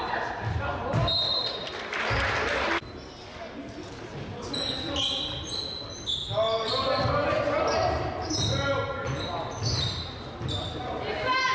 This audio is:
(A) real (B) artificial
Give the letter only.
A